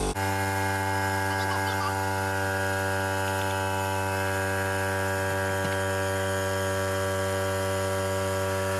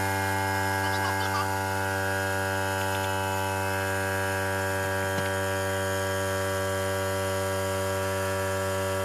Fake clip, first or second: first